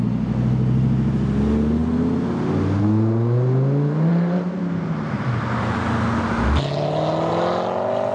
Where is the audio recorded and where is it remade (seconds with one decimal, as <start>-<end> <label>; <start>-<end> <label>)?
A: 0.0-8.1 recorded